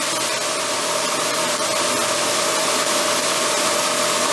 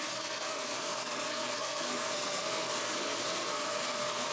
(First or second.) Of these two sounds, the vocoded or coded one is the second